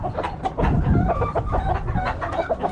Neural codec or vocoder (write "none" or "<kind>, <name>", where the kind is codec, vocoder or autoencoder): none